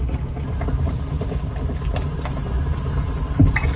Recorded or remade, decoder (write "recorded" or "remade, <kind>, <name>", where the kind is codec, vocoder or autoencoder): recorded